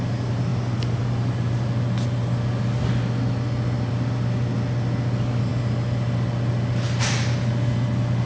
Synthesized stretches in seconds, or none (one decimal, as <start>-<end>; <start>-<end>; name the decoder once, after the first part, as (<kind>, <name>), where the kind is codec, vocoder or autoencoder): none